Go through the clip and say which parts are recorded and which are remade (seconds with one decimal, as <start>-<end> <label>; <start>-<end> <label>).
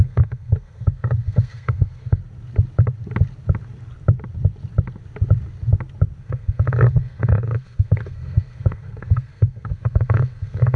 0.0-2.2 remade; 2.2-6.2 recorded; 6.2-10.8 remade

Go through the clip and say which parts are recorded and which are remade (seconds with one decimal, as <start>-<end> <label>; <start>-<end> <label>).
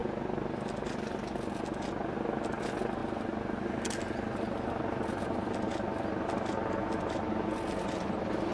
0.0-8.5 recorded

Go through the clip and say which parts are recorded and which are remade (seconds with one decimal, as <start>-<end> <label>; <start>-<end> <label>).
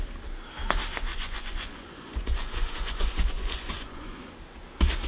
0.0-1.1 recorded; 1.1-4.2 remade; 4.2-5.1 recorded